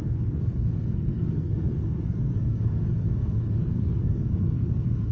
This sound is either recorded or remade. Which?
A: remade